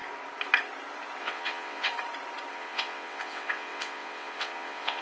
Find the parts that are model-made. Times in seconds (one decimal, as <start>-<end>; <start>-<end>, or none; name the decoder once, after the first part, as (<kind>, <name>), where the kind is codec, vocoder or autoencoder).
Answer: 1.2-1.9 (vocoder, WaveNeXt); 2.5-5.0